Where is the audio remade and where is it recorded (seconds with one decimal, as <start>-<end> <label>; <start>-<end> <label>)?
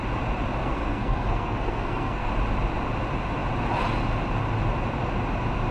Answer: 0.0-0.6 recorded; 0.6-2.3 remade; 2.3-5.7 recorded